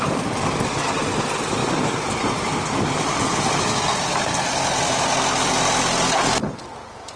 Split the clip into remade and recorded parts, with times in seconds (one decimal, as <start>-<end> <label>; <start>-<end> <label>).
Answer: 0.0-1.6 recorded; 1.6-5.5 remade; 5.5-7.2 recorded